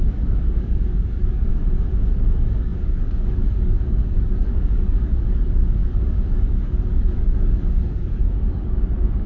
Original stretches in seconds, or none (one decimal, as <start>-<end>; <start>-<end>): 1.5-2.1